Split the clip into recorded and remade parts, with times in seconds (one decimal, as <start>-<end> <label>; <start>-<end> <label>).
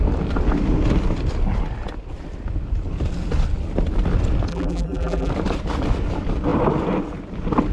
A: 0.0-4.5 recorded; 4.5-5.3 remade; 5.3-7.7 recorded